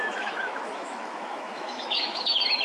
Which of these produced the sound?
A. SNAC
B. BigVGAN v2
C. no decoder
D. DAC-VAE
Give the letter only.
D